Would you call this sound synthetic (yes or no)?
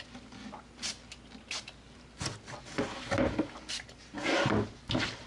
no